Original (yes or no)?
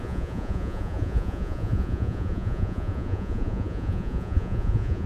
no